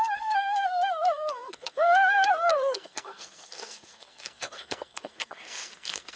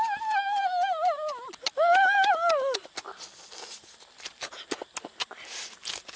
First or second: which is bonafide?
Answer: second